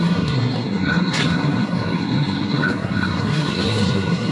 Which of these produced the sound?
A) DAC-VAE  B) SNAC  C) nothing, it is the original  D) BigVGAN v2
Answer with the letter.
B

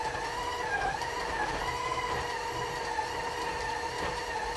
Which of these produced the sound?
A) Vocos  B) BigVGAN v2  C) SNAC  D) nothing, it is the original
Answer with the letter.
B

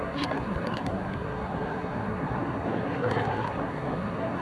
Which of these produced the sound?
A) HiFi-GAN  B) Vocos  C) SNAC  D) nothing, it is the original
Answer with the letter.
C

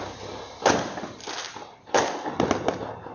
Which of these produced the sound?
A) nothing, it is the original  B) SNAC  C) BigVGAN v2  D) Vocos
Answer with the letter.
A